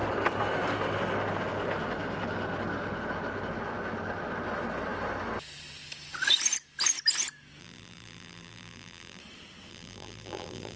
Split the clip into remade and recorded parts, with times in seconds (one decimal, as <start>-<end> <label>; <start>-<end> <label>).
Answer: 0.0-7.6 recorded; 7.6-9.2 remade; 9.2-9.7 recorded; 9.7-10.8 remade